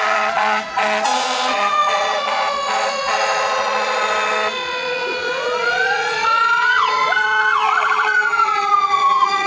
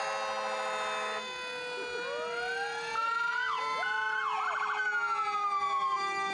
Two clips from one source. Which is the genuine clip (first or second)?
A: second